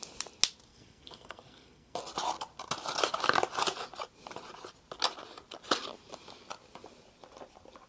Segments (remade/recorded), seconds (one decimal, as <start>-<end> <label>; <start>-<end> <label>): 0.0-0.7 recorded; 0.7-2.0 remade; 2.0-7.9 recorded